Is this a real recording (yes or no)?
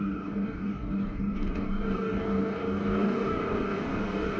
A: no